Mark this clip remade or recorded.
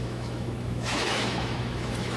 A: remade